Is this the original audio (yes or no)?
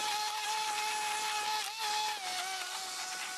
yes